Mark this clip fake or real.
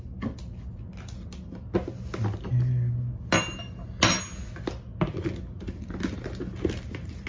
real